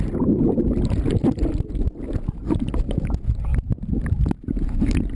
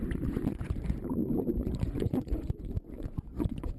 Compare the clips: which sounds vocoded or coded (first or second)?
second